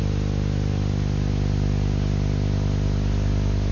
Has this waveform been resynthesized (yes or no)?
no